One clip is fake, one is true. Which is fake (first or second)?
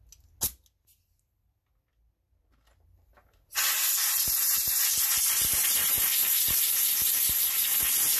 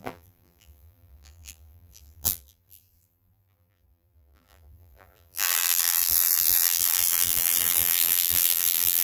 second